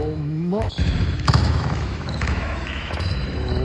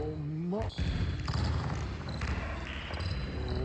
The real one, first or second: second